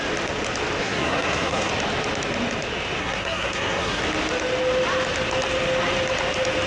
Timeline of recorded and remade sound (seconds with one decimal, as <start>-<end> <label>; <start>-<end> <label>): 0.0-0.8 recorded; 0.8-1.7 remade; 1.7-3.0 recorded; 3.0-4.0 remade; 4.0-6.7 recorded